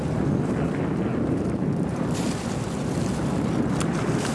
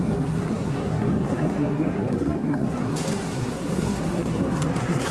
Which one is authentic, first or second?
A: first